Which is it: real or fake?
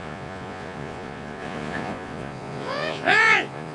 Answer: fake